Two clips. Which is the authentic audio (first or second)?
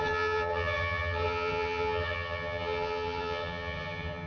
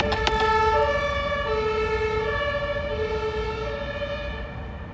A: second